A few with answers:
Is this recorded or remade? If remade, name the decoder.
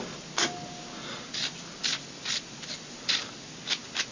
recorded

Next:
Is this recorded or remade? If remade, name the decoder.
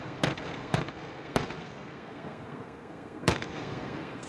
remade, codec, SNAC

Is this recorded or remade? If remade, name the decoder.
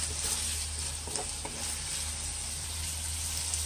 recorded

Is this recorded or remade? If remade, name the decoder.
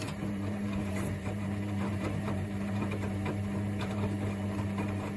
remade, vocoder, BigVGAN v2